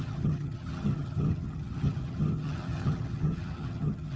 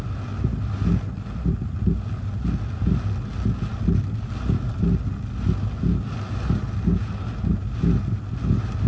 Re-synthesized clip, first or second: first